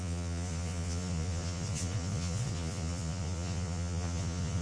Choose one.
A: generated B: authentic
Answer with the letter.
A